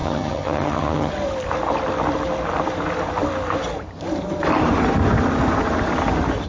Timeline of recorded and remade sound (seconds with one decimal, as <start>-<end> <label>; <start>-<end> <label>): 0.0-1.1 remade; 1.1-6.5 recorded